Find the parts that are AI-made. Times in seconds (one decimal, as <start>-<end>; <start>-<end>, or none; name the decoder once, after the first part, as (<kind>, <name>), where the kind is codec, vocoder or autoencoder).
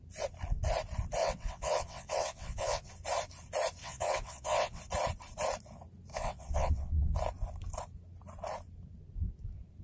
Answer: 1.2-2.9 (vocoder, WaveNeXt); 3.8-4.8; 6.1-7.1